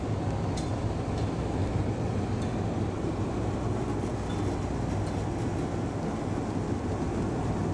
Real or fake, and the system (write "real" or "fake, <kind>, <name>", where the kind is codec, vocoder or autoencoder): real